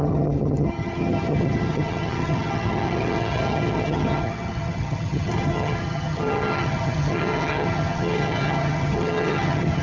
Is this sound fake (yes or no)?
yes